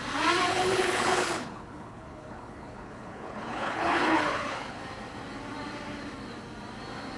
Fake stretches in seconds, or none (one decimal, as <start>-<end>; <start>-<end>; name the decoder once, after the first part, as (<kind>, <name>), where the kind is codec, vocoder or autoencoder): 0.5-4.8 (codec, HILCodec)